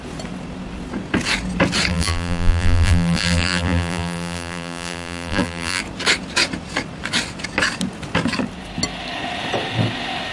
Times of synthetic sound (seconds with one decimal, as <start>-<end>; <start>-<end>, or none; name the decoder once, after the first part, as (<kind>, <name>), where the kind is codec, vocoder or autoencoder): 1.9-5.8 (vocoder, BigVGAN v2)